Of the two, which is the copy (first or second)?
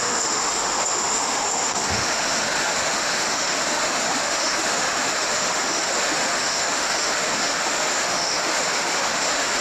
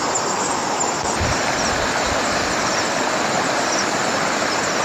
first